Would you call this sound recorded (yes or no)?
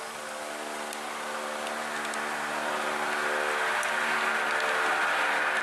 yes